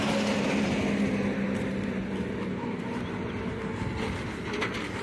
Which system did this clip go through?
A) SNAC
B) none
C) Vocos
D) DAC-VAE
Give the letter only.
B